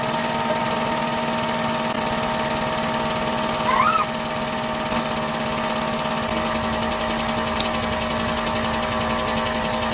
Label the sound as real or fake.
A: real